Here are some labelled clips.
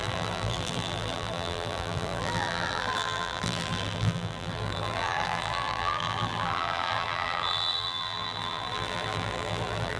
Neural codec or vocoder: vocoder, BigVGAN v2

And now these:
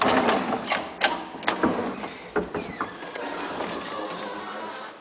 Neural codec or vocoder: none